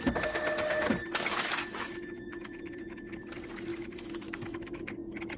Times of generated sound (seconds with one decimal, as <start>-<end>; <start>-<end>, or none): 1.5-3.2; 3.7-4.8

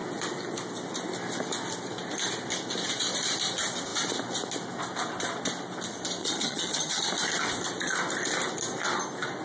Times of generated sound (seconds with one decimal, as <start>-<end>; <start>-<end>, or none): 6.2-7.0

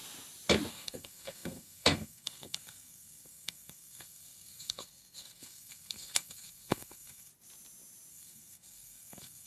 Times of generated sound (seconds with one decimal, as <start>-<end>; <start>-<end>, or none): 0.7-7.3; 8.1-9.5

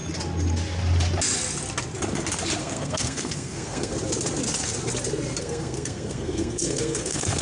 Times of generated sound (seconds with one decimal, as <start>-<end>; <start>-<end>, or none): 2.6-3.9; 5.4-7.4

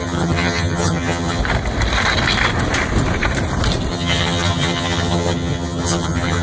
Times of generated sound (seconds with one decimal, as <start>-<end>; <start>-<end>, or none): 0.0-1.4; 3.9-6.4

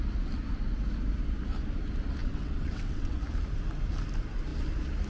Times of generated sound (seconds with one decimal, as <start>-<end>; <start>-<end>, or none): 2.2-3.2

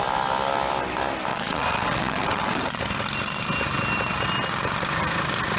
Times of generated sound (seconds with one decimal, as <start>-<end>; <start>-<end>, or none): 1.3-2.8

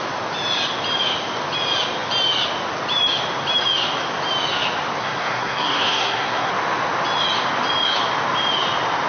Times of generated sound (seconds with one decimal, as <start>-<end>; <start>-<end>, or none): 5.0-6.5